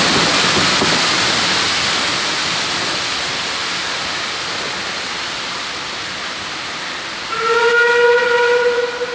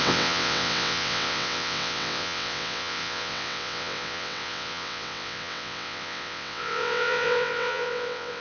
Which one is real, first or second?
first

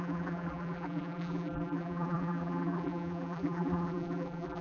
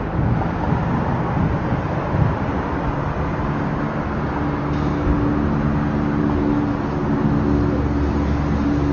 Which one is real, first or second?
second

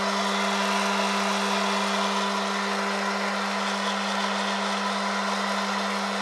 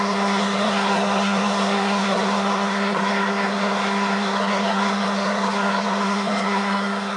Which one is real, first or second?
first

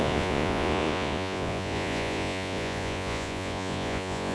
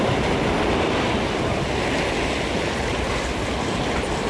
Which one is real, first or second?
second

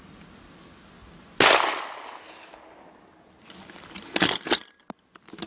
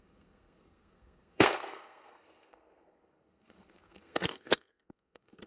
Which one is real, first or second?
first